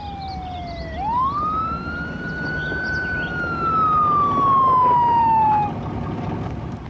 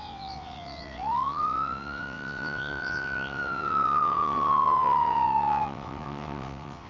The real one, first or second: first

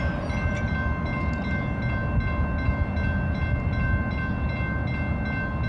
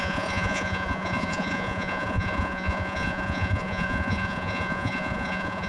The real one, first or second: first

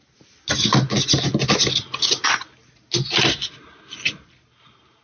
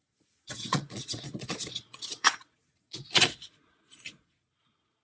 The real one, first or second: first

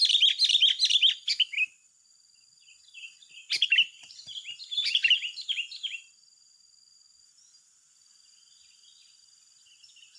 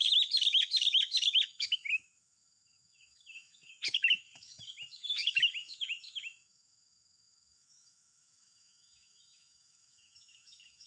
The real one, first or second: first